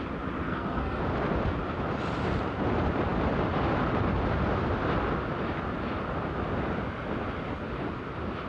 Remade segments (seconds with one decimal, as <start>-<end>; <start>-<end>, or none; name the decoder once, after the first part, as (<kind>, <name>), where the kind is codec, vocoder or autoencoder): 0.4-1.0 (codec, SNAC)